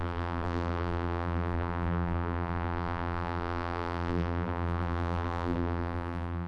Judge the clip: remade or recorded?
remade